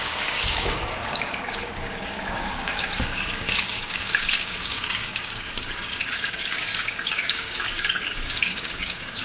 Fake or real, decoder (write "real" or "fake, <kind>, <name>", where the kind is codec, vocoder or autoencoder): fake, codec, DAC